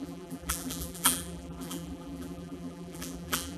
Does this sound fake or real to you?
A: fake